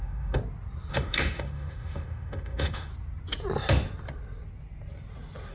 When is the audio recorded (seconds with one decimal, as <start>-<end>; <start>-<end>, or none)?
0.4-0.9; 2.9-5.5